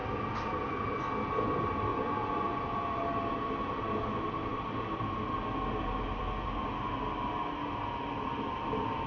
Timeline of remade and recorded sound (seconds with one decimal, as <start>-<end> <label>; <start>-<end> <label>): 0.0-1.9 recorded; 1.9-3.0 remade; 3.0-9.1 recorded